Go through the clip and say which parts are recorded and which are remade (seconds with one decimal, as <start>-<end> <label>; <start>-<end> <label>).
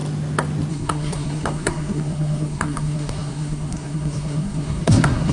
0.0-0.7 recorded; 0.7-5.3 remade